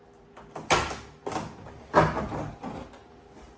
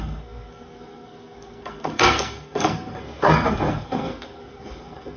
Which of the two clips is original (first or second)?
first